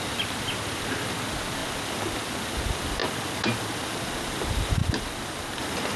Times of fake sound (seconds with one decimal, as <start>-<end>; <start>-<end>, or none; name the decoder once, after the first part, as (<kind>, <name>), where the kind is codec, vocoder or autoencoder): none